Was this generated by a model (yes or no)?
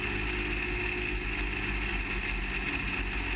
no